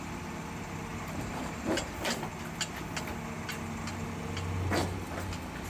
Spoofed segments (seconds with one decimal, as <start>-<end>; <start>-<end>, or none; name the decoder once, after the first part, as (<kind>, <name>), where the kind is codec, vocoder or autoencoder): 0.9-1.9 (vocoder, BigVGAN v2)